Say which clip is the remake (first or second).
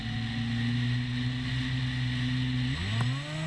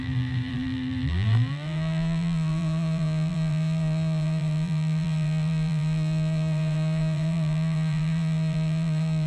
second